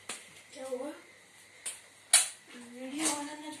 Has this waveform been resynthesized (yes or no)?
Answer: no